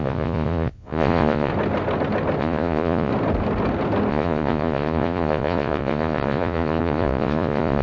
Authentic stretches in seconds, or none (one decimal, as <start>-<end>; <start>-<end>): 1.5-2.4; 3.1-4.1